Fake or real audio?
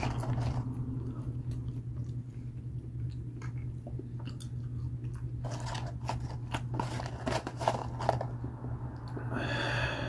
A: real